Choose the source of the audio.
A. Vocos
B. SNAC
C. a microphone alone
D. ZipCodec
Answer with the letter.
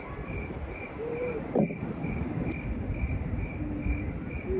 C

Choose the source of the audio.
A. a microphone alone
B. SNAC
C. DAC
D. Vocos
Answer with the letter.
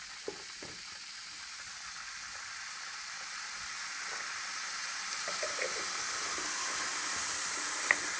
A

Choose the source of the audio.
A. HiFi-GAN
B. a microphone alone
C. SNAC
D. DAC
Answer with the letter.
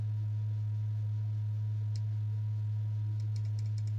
B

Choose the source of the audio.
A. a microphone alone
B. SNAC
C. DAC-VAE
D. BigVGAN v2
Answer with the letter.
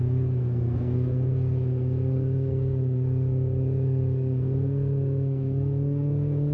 B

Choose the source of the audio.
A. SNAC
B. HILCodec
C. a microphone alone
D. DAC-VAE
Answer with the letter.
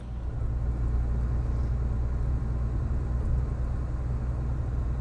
C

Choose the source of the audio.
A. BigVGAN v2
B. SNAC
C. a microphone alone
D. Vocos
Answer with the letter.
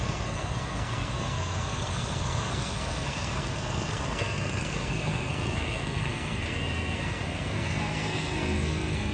B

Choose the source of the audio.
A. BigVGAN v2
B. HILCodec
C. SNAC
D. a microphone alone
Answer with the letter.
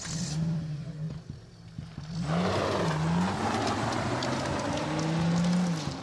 D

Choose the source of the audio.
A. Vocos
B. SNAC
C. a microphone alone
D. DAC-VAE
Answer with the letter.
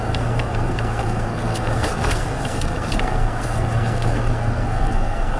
B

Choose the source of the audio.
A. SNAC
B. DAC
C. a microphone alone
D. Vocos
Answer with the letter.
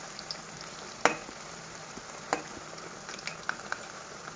C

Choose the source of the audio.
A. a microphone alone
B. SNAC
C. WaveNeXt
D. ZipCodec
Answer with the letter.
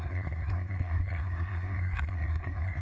B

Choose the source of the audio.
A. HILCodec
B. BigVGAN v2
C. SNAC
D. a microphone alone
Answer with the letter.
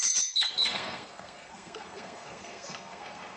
C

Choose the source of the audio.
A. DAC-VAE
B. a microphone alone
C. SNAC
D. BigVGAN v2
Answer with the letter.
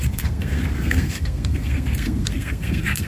C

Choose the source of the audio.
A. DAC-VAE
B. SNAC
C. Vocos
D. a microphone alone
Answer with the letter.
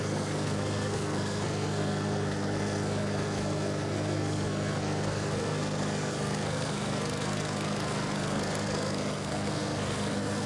B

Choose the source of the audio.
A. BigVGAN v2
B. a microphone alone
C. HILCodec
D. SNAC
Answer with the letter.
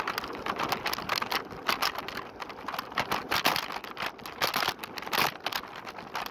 B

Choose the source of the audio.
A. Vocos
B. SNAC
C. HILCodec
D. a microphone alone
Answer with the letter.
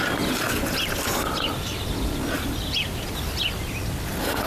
D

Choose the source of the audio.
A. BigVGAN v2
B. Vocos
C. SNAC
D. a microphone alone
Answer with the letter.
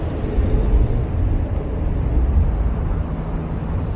D